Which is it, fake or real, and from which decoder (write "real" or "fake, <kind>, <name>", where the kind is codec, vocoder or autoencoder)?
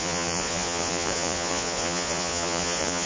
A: fake, vocoder, Vocos